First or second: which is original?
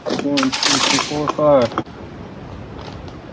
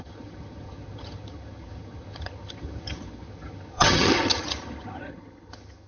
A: first